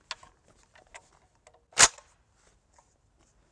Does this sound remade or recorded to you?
recorded